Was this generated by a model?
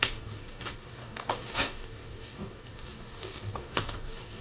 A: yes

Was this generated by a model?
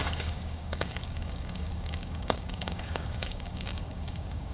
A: yes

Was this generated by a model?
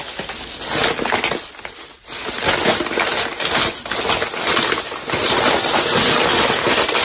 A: no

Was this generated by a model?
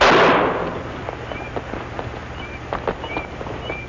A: no